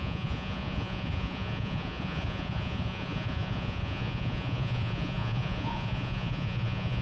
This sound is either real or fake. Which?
fake